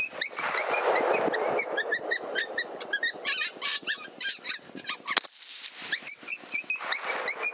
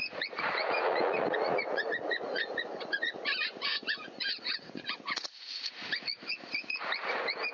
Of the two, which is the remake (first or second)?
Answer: second